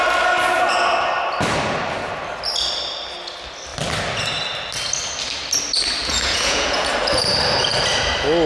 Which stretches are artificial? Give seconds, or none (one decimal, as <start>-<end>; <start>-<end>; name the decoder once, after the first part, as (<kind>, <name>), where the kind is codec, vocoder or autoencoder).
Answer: 6.0-6.9 (vocoder, Vocos)